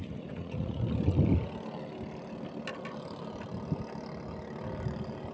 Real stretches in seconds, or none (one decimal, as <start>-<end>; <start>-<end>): 0.8-5.3

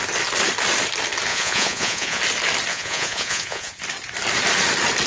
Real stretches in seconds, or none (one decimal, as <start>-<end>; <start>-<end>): 0.0-1.3; 2.2-2.7; 3.8-5.1